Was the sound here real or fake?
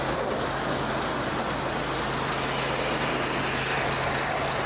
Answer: real